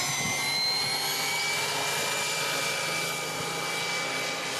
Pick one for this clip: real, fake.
real